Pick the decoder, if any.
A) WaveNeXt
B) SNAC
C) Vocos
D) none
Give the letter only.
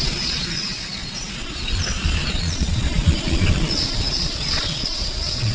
C